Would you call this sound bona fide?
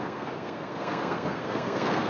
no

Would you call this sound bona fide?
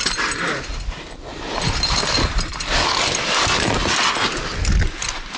yes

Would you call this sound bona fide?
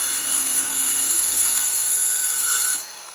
no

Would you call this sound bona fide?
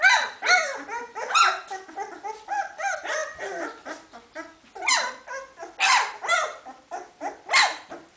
yes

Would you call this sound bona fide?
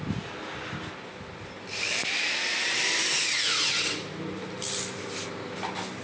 yes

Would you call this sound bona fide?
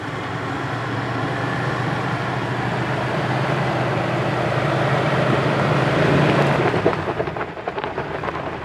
no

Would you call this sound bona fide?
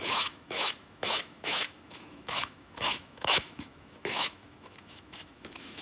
no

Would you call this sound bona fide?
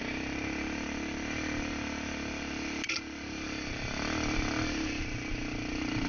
yes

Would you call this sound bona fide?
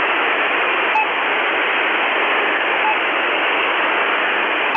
yes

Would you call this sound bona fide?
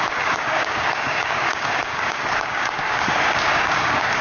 no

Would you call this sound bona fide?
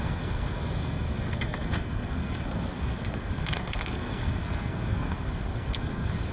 no